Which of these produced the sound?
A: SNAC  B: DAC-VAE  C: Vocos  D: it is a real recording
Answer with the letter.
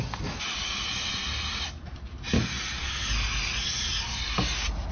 D